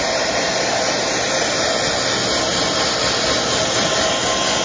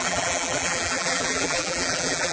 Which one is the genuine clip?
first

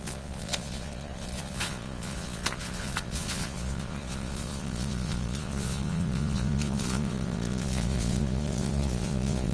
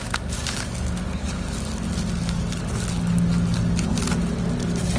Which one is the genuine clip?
second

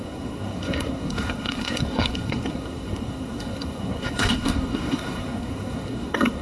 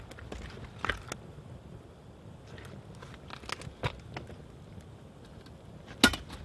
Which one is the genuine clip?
second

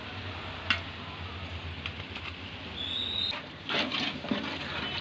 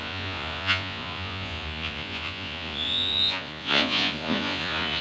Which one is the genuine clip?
first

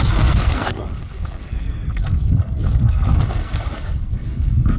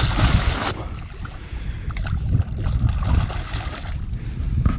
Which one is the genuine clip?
second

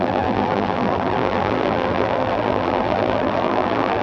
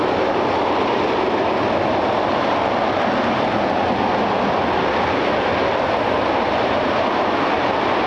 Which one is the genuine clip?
second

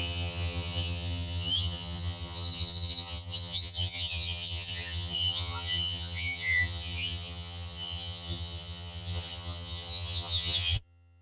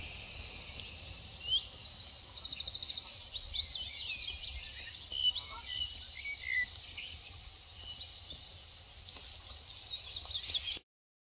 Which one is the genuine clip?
second